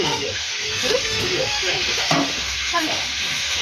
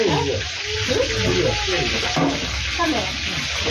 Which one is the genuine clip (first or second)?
second